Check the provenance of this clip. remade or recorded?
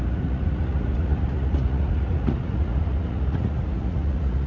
remade